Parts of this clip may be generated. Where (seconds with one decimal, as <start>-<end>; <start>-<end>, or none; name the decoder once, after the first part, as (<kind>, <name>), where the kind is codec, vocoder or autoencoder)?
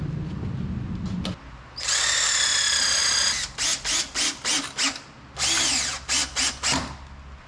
none